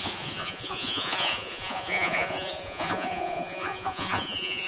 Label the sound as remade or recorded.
remade